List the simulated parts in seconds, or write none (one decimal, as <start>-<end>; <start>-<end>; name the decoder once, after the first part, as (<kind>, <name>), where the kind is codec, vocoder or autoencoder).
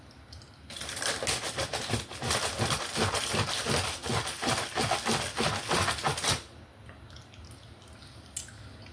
none